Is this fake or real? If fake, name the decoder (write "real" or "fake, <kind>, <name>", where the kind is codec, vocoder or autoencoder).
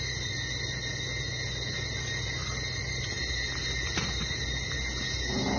real